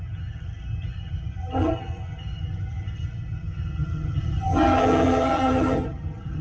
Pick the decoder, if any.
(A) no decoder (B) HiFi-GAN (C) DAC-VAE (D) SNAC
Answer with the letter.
B